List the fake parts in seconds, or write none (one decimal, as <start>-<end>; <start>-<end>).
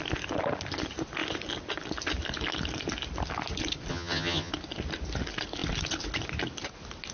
3.9-4.5